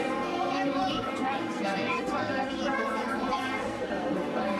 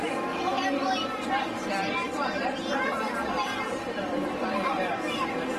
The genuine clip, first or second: second